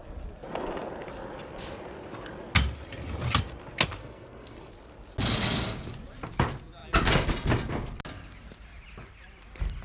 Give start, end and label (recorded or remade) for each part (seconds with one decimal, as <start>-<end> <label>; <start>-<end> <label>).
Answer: 0.0-4.0 recorded; 4.0-4.7 remade; 4.7-9.8 recorded